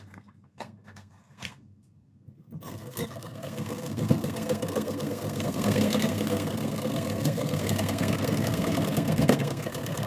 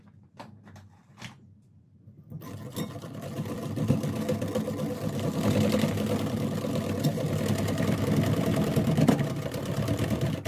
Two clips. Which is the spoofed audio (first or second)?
first